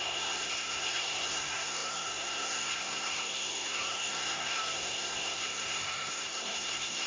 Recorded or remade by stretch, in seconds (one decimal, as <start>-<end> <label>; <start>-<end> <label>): 0.0-7.1 remade